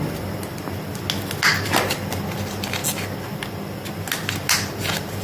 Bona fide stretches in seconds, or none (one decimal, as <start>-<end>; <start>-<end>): 0.0-5.2